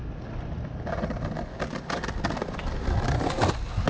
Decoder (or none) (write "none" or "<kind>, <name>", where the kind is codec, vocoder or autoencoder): none